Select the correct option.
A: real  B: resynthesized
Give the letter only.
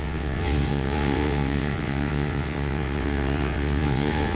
B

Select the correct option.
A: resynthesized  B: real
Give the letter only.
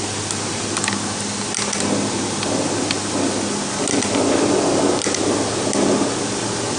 B